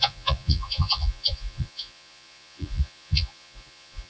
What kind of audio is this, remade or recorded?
remade